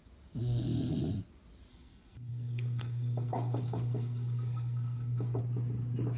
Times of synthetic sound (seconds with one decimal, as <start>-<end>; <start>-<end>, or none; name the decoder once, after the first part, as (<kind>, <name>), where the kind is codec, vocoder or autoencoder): 1.7-5.4 (codec, SNAC)